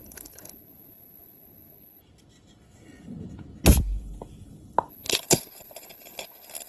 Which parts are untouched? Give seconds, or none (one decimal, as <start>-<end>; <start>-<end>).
2.0-4.9